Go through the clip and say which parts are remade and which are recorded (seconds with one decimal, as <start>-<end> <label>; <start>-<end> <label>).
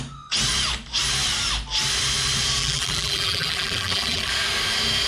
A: 0.0-2.6 recorded; 2.6-4.3 remade; 4.3-5.1 recorded